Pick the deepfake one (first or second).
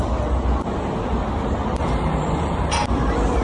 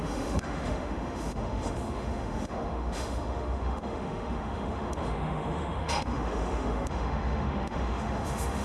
second